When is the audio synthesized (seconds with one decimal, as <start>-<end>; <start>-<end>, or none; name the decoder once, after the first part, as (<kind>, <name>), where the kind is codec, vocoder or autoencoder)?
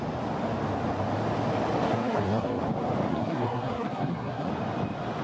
1.9-2.6 (codec, SNAC); 3.1-4.5